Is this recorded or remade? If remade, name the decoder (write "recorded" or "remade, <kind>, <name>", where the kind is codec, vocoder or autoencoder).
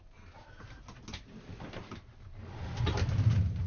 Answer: recorded